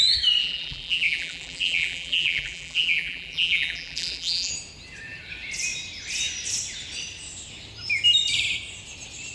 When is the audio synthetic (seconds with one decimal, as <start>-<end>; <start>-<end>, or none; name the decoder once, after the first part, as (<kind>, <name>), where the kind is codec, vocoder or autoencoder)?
0.4-4.5 (vocoder, BigVGAN v2)